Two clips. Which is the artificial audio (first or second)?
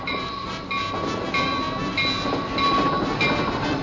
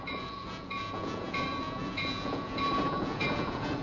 second